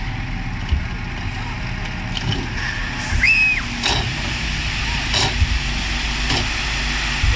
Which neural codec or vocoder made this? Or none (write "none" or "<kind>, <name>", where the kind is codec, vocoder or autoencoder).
none